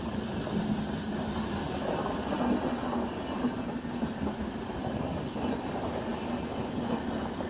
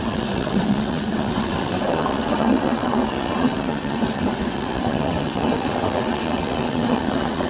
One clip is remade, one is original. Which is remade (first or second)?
second